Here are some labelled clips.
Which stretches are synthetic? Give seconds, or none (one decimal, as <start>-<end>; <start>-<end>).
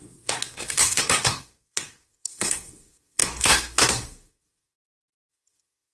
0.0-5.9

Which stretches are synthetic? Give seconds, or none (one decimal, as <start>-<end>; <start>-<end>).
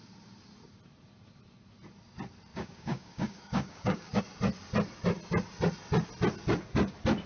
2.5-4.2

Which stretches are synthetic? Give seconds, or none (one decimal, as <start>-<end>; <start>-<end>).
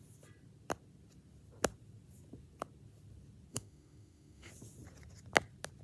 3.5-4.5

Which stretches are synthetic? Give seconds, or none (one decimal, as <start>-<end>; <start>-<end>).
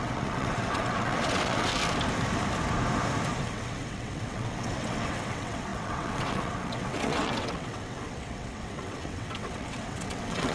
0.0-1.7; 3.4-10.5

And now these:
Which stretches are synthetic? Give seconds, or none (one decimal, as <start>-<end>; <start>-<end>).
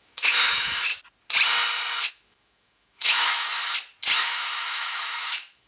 0.0-0.9; 2.1-3.5; 4.2-5.7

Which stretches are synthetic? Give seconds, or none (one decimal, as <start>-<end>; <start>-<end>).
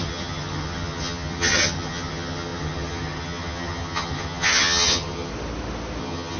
0.0-5.3; 6.0-6.4